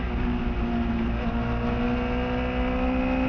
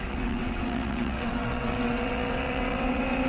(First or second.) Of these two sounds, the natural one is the first